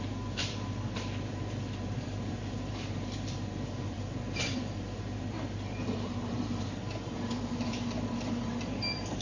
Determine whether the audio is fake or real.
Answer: fake